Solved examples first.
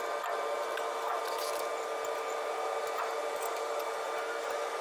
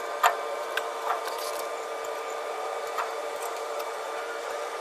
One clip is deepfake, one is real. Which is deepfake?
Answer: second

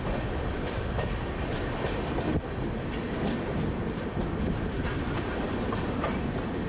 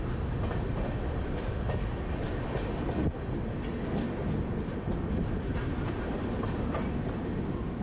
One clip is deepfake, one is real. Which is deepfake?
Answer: first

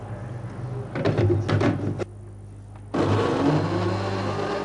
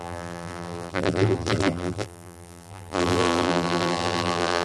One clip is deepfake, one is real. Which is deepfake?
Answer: second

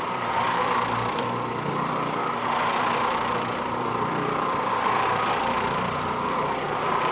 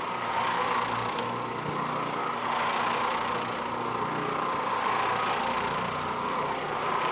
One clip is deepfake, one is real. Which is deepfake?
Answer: first